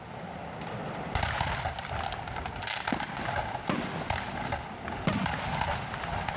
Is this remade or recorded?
recorded